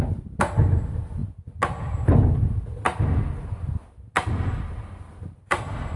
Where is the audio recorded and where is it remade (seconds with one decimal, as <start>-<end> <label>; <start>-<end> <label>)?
0.0-6.0 recorded